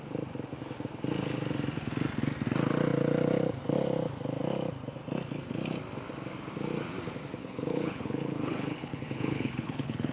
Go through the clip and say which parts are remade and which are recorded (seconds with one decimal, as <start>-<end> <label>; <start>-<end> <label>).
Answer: 0.0-7.4 recorded; 7.4-10.1 remade